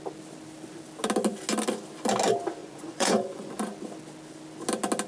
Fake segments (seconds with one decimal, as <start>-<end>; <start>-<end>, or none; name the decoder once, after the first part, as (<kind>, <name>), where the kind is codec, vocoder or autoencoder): 2.6-3.5 (vocoder, Vocos)